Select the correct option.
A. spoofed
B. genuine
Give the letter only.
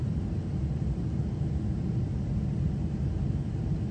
B